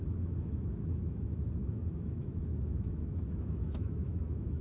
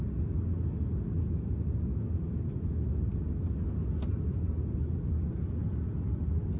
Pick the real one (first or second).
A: second